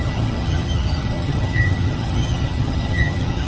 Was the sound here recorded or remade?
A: remade